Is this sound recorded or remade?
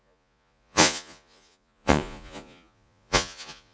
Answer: remade